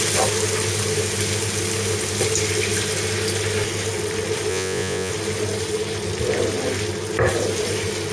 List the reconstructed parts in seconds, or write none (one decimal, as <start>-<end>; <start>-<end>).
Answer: 4.5-5.1